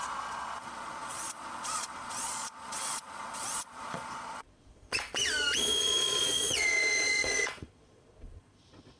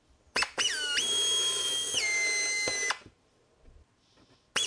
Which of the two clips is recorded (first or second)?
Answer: second